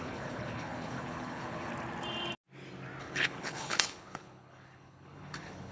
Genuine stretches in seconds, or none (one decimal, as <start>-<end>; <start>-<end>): 1.7-3.0